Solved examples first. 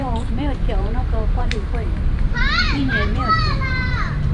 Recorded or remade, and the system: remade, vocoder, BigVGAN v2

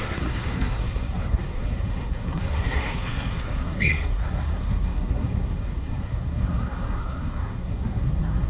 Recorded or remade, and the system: remade, codec, SNAC